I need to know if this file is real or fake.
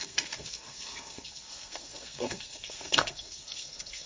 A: fake